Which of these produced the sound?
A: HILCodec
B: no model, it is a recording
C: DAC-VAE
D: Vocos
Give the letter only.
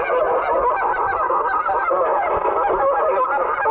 B